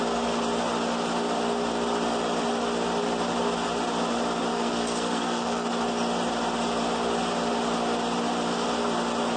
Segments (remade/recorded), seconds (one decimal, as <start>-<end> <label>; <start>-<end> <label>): 0.0-4.5 recorded; 4.5-5.7 remade; 5.7-9.4 recorded